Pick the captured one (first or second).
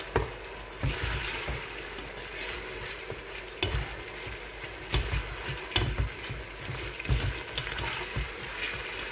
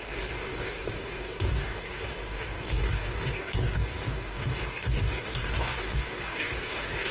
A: first